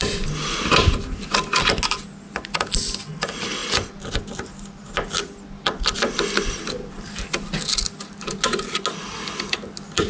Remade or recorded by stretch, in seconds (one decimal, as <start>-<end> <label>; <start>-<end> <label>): 0.0-10.1 recorded